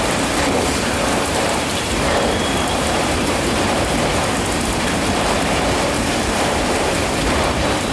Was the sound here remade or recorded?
remade